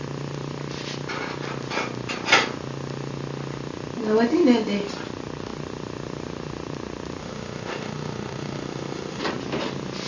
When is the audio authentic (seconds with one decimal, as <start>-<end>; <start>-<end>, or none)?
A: 0.0-7.2; 9.2-10.1